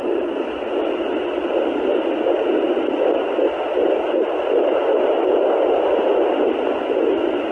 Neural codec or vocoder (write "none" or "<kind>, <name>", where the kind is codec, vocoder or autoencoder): none